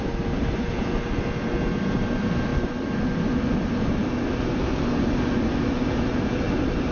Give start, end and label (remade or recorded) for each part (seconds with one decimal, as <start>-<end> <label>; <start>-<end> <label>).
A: 0.0-6.9 recorded